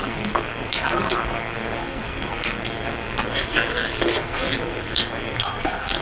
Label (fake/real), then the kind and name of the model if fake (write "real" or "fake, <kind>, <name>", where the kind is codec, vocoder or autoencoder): fake, codec, SNAC